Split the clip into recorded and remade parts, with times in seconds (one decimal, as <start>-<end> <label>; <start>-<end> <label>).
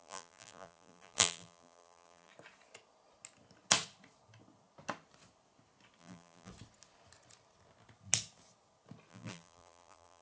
0.0-2.3 remade; 2.3-6.0 recorded; 6.0-6.5 remade; 6.5-9.1 recorded; 9.1-10.2 remade